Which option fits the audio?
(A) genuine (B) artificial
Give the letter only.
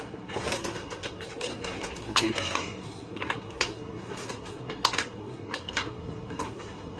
B